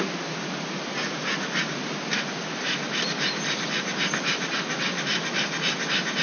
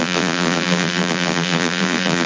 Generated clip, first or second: second